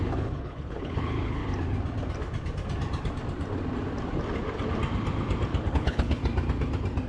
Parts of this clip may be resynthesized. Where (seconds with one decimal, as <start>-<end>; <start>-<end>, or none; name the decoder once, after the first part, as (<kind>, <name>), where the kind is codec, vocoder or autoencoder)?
0.0-1.4 (codec, HILCodec); 5.7-6.2